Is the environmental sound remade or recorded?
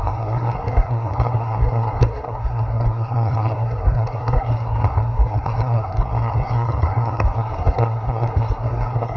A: remade